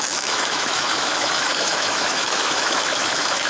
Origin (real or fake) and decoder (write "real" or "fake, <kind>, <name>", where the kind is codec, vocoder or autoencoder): fake, autoencoder, DAC-VAE